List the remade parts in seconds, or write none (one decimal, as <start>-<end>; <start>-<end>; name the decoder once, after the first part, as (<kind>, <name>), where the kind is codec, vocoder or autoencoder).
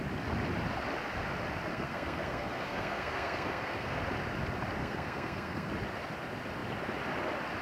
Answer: 1.7-4.0 (codec, SNAC); 4.8-5.7